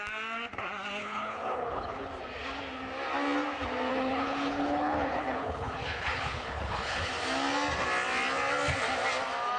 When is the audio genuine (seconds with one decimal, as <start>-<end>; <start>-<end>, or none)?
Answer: 0.0-1.0; 2.1-3.9; 7.1-9.6

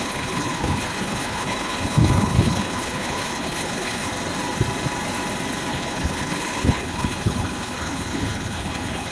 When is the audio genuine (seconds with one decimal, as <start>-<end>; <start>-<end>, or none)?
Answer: 4.1-5.7

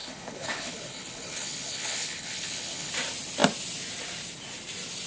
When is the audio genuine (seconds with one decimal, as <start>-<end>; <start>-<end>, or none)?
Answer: 2.9-5.1

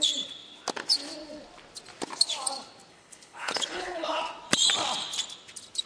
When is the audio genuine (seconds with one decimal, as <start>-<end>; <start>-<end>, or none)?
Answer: 0.0-2.9; 4.2-5.9

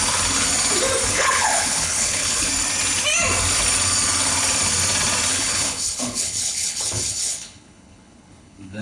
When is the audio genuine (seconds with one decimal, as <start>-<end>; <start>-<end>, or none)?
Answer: 0.0-1.1; 2.5-5.3

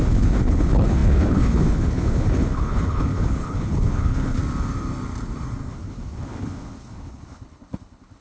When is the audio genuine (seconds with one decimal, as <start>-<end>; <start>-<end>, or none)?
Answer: 4.4-5.7